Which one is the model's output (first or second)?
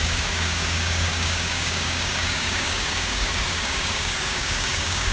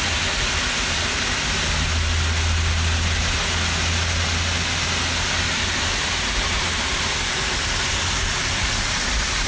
first